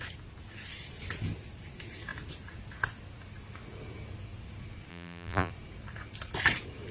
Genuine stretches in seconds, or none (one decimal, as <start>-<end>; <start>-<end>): 0.0-4.9; 5.5-6.9